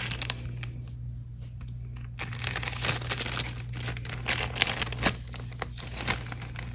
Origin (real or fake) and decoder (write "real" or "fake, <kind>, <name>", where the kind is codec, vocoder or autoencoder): real